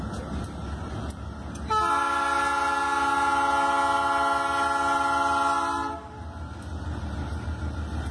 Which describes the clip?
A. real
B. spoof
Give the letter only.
A